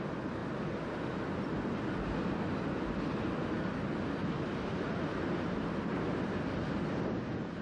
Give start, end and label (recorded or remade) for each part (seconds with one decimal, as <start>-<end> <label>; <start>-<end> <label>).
0.0-4.2 recorded; 4.2-5.2 remade; 5.2-7.6 recorded